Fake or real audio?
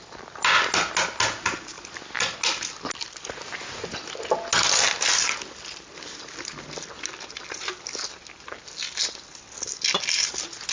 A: real